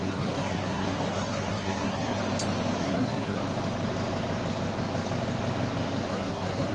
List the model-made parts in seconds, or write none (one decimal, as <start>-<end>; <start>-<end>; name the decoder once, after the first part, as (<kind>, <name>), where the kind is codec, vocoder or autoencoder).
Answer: 0.0-2.2 (codec, SNAC); 2.8-3.4; 6.1-6.7